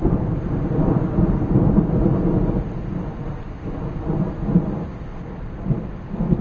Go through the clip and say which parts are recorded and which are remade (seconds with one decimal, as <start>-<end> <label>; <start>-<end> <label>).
0.0-6.4 recorded